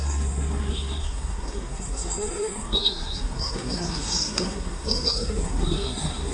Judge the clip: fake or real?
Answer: fake